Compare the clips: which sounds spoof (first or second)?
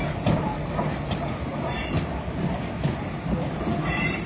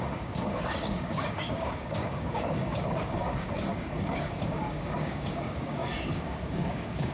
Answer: second